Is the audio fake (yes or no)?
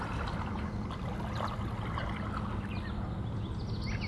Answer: no